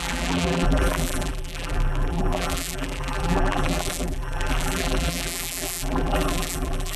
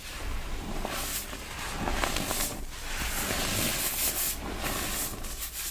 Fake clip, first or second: first